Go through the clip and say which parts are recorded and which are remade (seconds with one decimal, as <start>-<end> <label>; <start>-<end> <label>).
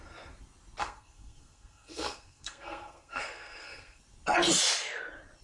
0.0-0.8 recorded; 0.8-4.0 remade; 4.0-5.4 recorded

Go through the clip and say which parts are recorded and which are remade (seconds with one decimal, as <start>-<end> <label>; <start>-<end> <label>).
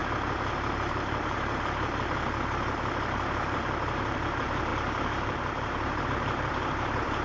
0.0-0.7 recorded; 0.7-7.2 remade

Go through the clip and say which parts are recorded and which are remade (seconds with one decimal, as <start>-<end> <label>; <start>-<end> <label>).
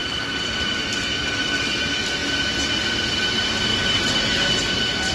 0.0-5.1 recorded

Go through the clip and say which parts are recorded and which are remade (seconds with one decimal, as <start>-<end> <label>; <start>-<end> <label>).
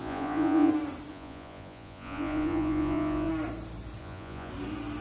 0.0-0.7 remade; 0.7-1.1 recorded; 1.1-3.3 remade; 3.3-4.0 recorded; 4.0-4.5 remade; 4.5-5.0 recorded